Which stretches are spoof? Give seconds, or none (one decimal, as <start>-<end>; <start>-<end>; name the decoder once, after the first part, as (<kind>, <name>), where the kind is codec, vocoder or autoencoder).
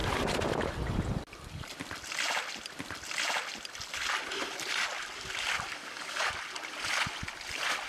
5.7-6.3 (codec, DAC)